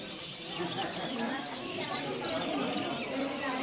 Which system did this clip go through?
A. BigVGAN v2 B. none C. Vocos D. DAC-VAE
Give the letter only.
A